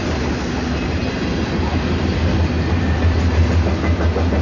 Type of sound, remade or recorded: recorded